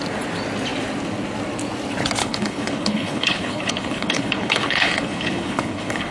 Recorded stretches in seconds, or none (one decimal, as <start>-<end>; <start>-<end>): 0.0-2.2